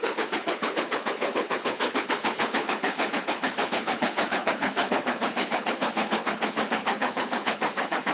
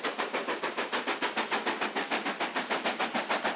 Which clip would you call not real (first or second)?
first